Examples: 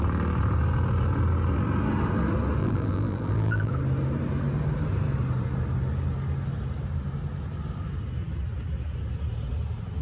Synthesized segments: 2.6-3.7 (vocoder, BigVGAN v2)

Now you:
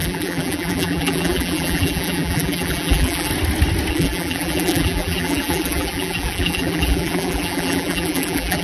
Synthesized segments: 0.0-3.3 (vocoder, BigVGAN v2); 3.9-8.6

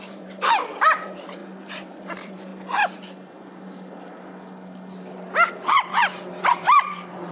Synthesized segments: 0.0-1.4 (vocoder, BigVGAN v2); 2.0-2.5; 5.5-7.3

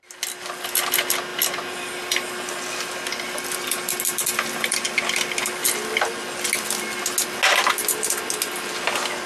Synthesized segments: 1.3-5.5 (vocoder, BigVGAN v2)